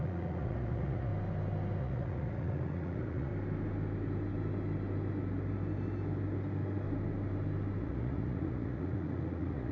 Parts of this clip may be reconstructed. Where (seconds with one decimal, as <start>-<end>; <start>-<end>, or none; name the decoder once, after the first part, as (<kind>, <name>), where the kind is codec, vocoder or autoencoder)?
0.0-1.1 (vocoder, Vocos); 1.8-3.3; 7.8-9.7